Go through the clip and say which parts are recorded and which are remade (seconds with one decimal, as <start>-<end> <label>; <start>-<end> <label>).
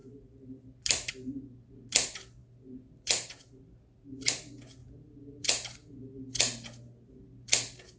0.0-8.0 recorded